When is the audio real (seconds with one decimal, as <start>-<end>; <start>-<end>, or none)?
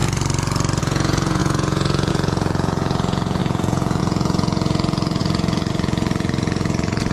0.0-0.8